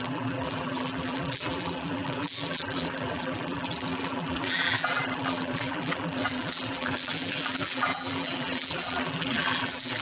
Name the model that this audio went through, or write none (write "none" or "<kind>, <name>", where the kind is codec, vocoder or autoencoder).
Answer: vocoder, BigVGAN v2